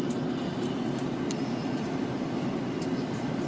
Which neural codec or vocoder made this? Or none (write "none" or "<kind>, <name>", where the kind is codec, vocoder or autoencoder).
none